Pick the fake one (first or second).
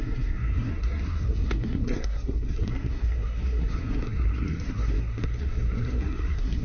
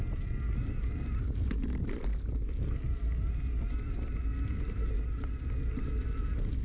first